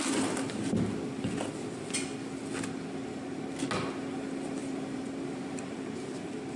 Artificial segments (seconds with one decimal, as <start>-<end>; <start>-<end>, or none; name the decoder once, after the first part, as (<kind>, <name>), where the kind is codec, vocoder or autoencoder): 4.6-6.6 (vocoder, BigVGAN v2)